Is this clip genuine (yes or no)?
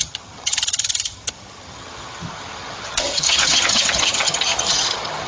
no